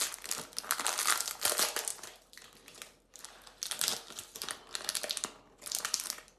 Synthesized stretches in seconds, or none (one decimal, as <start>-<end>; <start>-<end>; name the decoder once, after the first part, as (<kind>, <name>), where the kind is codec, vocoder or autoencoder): none